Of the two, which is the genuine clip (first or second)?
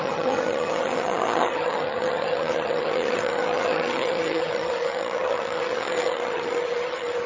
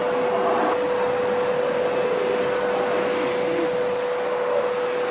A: second